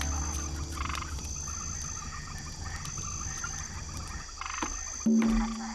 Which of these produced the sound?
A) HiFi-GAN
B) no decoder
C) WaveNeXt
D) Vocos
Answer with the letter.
B